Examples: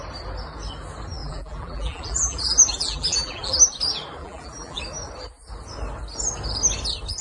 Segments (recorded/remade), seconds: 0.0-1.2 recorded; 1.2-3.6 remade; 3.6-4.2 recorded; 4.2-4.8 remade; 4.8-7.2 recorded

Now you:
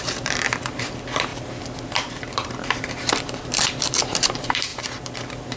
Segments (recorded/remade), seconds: 0.0-5.6 remade

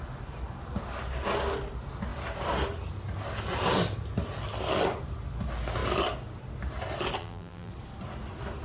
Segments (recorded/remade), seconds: 0.0-7.2 recorded; 7.2-7.7 remade; 7.7-8.6 recorded

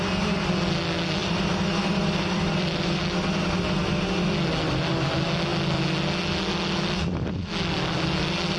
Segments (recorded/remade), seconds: 0.0-1.2 recorded; 1.2-3.0 remade; 3.0-8.6 recorded